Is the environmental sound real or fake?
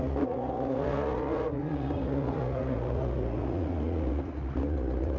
fake